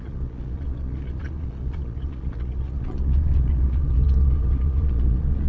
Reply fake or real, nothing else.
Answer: fake